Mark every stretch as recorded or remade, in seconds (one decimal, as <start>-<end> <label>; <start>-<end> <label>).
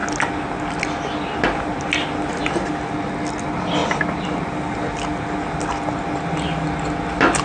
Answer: 0.0-7.4 recorded